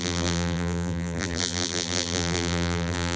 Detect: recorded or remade remade